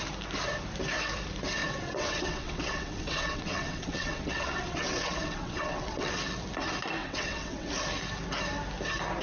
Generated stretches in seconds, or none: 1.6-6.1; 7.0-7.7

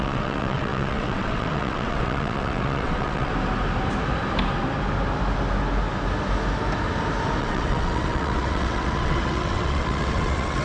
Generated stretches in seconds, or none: 0.0-3.3; 7.4-10.6

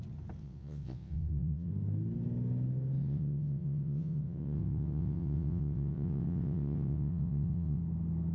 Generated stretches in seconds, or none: 0.4-1.7; 3.0-7.8

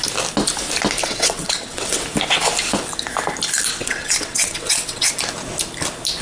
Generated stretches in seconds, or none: 1.0-2.0; 3.7-5.1

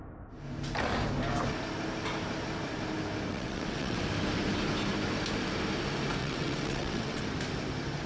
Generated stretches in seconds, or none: 3.3-4.0; 6.2-7.2